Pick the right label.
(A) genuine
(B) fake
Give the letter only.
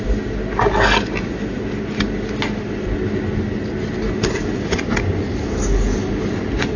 A